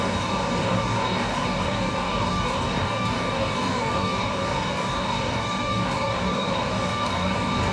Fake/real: fake